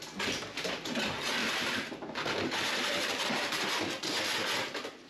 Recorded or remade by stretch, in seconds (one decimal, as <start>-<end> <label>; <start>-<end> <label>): 0.0-1.4 recorded; 1.4-3.6 remade; 3.6-5.1 recorded